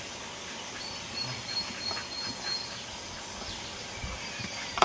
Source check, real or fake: real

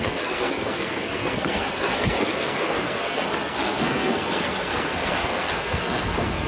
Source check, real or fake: fake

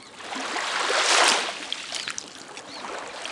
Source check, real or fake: real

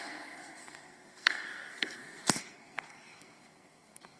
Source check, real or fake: fake